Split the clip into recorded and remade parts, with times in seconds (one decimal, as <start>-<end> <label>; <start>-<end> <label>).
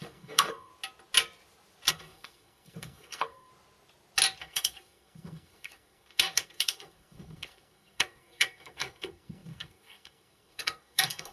0.0-0.7 remade; 0.7-1.9 recorded; 1.9-3.5 remade; 3.5-4.4 recorded; 4.4-11.3 remade